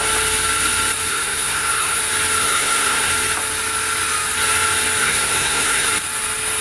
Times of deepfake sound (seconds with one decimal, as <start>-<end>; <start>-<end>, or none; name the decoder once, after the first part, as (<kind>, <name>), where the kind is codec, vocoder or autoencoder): 1.1-2.0 (codec, SNAC); 2.4-3.1; 5.0-5.9